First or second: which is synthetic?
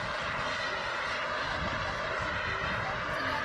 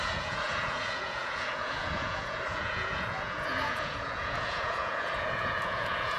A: second